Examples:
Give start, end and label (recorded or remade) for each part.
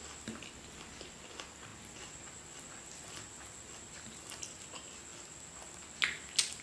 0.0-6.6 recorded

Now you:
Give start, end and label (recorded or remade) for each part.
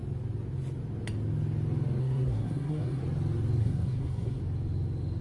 0.0-2.0 recorded; 2.0-3.0 remade; 3.0-3.6 recorded; 3.6-4.4 remade; 4.4-5.2 recorded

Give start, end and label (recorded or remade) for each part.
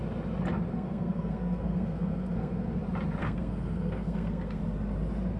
0.0-0.7 recorded; 0.7-2.8 remade; 2.8-3.2 recorded; 3.2-4.6 remade; 4.6-5.4 recorded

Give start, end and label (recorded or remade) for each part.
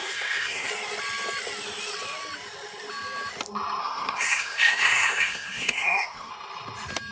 0.0-0.7 remade; 0.7-3.8 recorded; 3.8-6.3 remade; 6.3-7.1 recorded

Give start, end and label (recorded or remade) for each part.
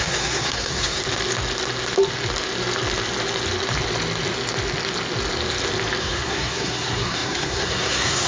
0.0-1.0 remade; 1.0-6.0 recorded; 6.0-8.3 remade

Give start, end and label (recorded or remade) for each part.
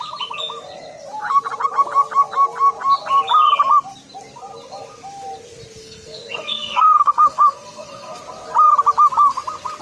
0.0-5.8 recorded; 5.8-8.2 remade; 8.2-9.8 recorded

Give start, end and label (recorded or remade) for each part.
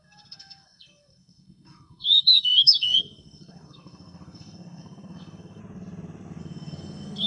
0.0-5.6 remade; 5.6-6.4 recorded; 6.4-7.3 remade